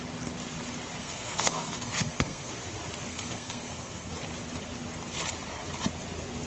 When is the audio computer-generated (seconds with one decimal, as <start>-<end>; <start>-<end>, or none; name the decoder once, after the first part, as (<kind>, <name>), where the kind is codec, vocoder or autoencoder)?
1.0-2.5 (codec, SNAC); 3.1-4.1